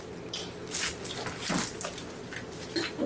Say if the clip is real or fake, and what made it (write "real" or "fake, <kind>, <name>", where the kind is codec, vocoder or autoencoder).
real